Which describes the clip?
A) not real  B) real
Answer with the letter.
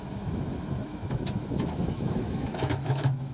A